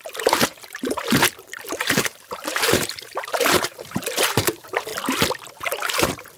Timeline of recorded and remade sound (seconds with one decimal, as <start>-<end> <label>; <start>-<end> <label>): 0.0-4.9 remade; 4.9-5.5 recorded; 5.5-6.4 remade